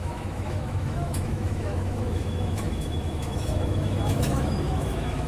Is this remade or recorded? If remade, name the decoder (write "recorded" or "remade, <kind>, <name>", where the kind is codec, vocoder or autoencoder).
remade, autoencoder, DAC-VAE